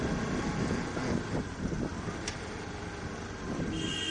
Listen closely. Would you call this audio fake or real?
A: real